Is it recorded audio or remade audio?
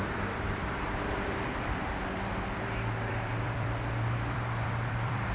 remade